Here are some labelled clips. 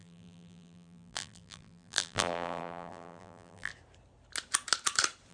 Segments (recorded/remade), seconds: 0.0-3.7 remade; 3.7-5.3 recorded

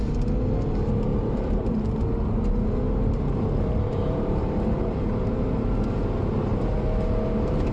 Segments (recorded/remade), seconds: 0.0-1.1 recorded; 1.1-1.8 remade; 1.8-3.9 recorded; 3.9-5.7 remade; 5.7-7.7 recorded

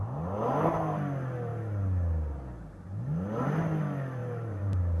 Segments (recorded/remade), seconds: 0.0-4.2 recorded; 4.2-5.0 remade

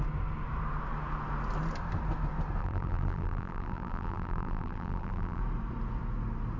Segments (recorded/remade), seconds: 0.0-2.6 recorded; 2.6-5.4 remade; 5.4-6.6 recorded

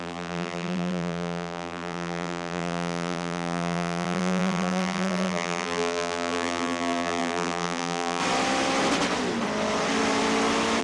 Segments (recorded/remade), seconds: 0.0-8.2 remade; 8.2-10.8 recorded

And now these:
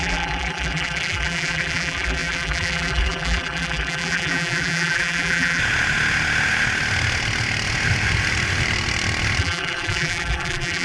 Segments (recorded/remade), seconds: 0.0-5.6 remade; 5.6-9.4 recorded; 9.4-10.8 remade